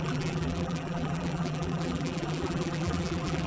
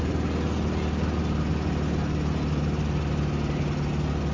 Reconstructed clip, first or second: first